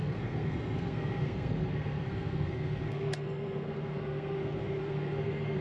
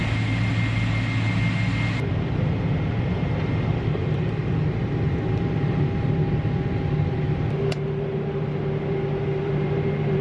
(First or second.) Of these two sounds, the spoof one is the first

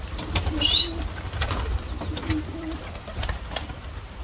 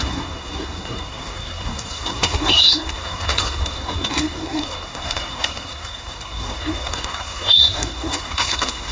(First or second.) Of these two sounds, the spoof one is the second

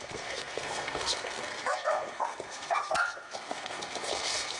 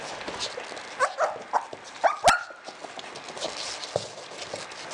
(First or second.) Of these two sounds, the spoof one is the first